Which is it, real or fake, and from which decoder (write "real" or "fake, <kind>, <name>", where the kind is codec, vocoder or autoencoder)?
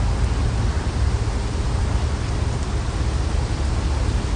real